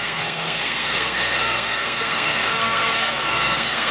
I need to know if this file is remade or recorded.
remade